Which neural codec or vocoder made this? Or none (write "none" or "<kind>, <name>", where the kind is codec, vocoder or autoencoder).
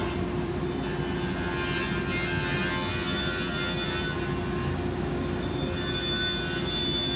none